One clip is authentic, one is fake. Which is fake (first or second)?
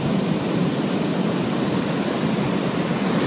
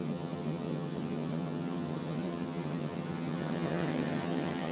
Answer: second